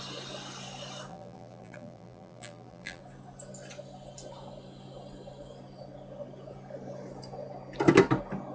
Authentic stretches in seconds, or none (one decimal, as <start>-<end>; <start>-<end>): 0.0-1.1; 3.0-8.5